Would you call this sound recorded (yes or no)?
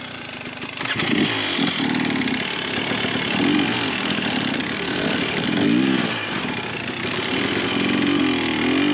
yes